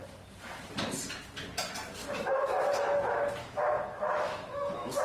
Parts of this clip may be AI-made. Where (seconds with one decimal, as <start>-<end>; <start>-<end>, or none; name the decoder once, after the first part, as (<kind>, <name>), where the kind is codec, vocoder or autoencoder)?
2.0-5.0 (autoencoder, DAC-VAE)

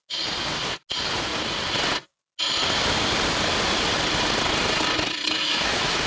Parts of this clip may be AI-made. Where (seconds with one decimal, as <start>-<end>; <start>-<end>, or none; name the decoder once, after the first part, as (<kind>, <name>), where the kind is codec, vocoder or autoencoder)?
5.2-6.1 (autoencoder, DAC-VAE)